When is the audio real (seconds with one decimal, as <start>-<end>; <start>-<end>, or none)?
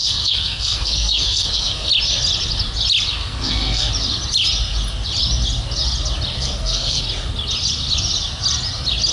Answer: 1.9-3.2; 3.9-6.3; 7.0-9.1